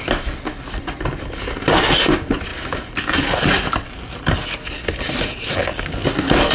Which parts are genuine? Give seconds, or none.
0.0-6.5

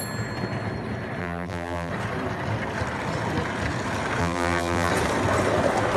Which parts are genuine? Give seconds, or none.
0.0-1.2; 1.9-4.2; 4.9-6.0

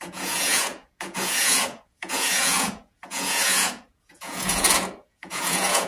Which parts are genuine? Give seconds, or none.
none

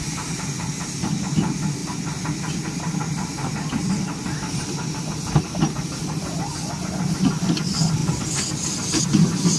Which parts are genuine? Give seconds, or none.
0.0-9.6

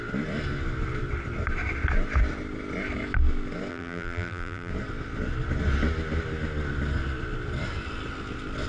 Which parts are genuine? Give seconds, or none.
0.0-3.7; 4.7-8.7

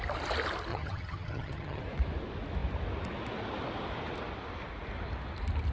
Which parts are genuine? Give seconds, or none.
0.0-0.7; 1.8-5.7